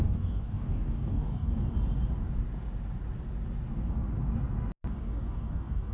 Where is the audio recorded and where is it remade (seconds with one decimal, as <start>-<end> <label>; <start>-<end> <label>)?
0.0-1.5 remade; 1.5-5.0 recorded; 5.0-5.9 remade